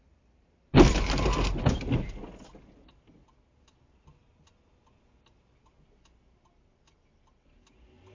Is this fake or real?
real